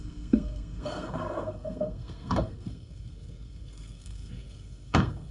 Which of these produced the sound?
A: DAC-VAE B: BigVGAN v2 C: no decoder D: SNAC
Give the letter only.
D